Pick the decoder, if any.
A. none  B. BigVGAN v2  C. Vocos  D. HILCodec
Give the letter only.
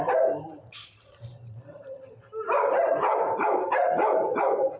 B